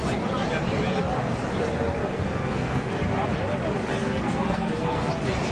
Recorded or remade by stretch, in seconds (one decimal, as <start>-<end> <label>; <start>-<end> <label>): 0.0-2.0 recorded; 2.0-2.9 remade; 2.9-4.0 recorded; 4.0-5.1 remade; 5.1-5.5 recorded